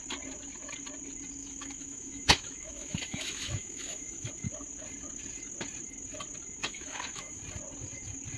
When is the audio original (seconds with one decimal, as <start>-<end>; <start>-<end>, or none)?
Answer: 0.0-1.4; 4.3-6.6; 7.4-8.4